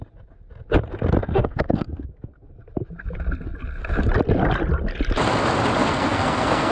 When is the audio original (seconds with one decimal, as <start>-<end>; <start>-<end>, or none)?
0.0-1.2; 2.5-5.8